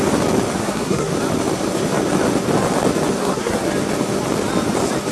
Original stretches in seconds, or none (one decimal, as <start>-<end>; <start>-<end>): 0.0-0.6; 1.1-3.2; 3.7-5.1